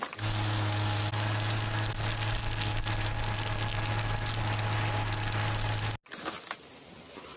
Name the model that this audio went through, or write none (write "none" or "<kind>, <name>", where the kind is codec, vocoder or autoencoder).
none